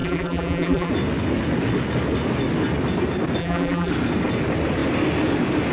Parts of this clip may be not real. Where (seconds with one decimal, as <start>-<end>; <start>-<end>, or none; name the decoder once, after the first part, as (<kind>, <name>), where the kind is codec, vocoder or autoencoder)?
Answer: 0.0-0.9 (vocoder, BigVGAN v2); 3.4-3.9